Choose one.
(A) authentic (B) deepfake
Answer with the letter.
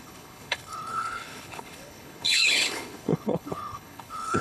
B